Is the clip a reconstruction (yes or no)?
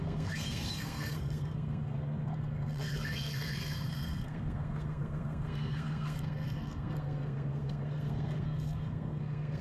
yes